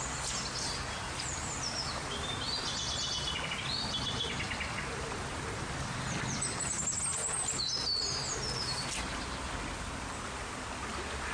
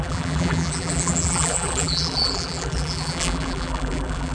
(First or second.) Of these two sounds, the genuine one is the first